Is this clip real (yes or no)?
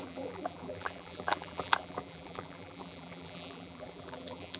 no